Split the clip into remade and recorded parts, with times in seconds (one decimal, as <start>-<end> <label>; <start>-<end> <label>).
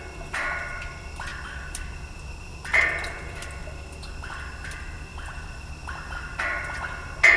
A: 0.0-3.6 remade; 3.6-4.2 recorded; 4.2-7.4 remade